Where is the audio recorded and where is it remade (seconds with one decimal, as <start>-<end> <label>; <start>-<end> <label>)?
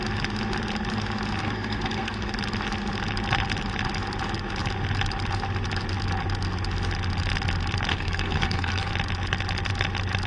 0.0-1.4 recorded; 1.4-2.3 remade; 2.3-7.9 recorded; 7.9-8.9 remade; 8.9-10.3 recorded